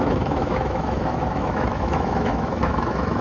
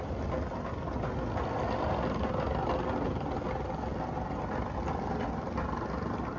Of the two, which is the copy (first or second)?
first